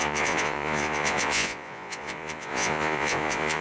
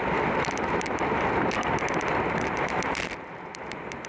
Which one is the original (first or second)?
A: second